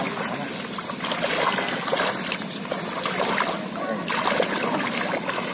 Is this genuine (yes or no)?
yes